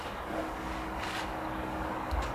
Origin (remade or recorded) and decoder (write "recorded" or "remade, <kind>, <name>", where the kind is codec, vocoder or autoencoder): remade, codec, DAC